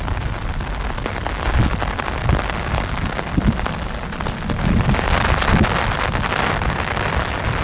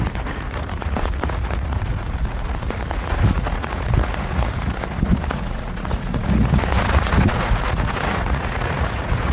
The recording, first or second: first